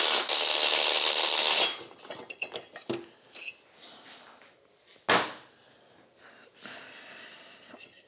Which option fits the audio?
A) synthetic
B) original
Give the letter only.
B